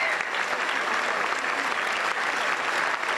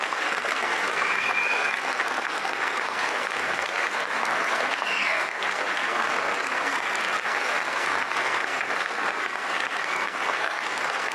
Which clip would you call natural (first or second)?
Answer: first